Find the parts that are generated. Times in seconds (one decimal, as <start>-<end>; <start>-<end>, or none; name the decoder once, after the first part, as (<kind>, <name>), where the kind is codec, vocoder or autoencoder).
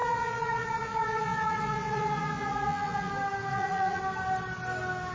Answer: 0.0-3.1 (vocoder, Vocos); 3.5-4.0